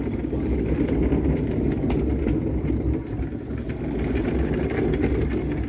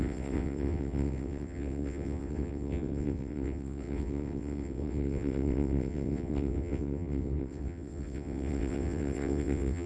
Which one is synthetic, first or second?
second